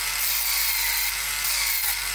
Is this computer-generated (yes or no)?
no